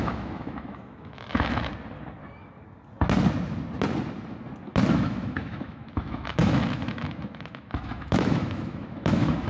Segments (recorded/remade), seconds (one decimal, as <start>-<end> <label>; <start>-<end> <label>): 0.0-1.7 remade; 1.7-4.9 recorded; 4.9-9.5 remade